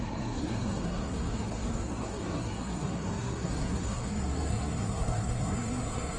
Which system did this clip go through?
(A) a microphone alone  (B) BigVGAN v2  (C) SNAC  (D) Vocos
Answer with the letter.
C